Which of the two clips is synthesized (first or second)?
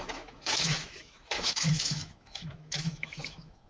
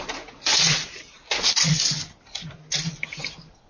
first